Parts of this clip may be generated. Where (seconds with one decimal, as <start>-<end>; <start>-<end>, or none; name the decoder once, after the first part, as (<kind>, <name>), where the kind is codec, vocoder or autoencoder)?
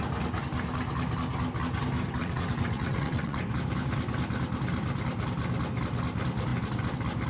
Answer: 2.2-3.4 (vocoder, WaveNeXt)